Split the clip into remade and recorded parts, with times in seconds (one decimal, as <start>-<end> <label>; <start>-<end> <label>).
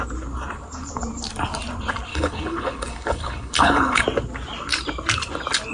0.0-2.1 recorded; 2.1-4.0 remade; 4.0-5.7 recorded